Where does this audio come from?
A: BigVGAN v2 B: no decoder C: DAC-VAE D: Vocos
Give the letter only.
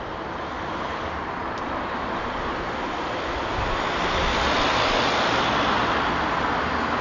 B